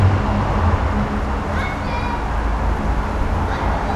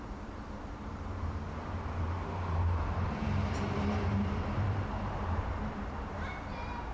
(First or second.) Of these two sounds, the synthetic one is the second